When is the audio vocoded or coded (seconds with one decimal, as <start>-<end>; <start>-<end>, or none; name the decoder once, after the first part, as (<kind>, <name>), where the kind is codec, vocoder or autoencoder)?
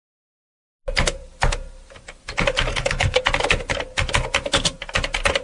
2.7-3.2 (codec, SNAC)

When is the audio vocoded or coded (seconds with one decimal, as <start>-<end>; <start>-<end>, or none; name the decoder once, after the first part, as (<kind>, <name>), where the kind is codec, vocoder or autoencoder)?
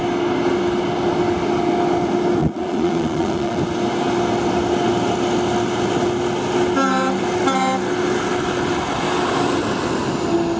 2.4-3.6 (vocoder, Vocos)